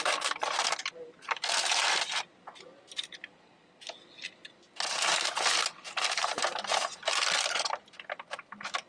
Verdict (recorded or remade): recorded